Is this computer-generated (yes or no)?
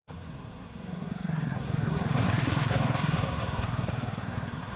yes